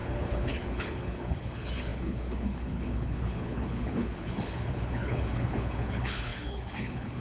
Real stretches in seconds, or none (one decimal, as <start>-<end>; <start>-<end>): none